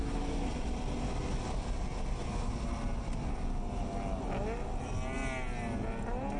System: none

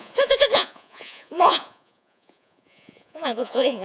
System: vocoder, Vocos